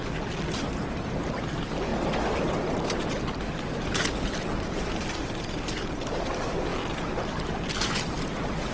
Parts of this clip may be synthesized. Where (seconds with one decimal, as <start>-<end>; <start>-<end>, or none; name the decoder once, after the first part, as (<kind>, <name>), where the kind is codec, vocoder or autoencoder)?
none